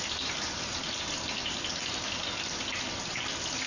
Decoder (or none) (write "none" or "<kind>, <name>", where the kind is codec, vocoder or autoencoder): none